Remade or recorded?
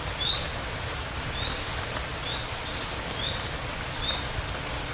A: recorded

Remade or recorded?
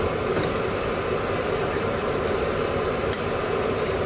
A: recorded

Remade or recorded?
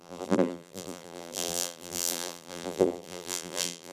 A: remade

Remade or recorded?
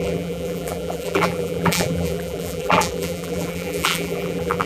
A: remade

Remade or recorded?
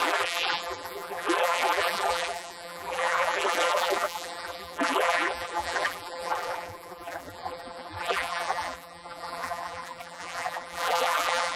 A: remade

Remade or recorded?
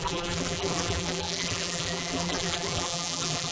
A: remade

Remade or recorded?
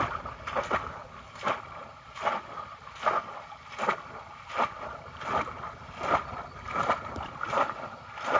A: remade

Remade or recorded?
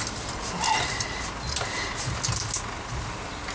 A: recorded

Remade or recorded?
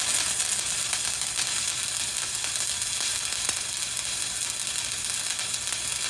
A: recorded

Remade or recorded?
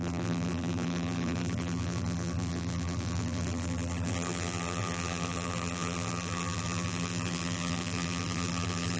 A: remade